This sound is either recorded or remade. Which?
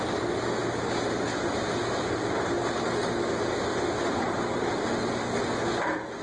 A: recorded